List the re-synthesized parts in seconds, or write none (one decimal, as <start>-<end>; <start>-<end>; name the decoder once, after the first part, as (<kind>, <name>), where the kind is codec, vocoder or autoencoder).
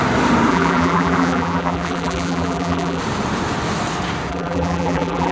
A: 0.5-3.0 (vocoder, BigVGAN v2); 4.3-5.3